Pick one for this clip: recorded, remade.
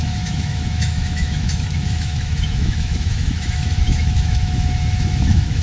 remade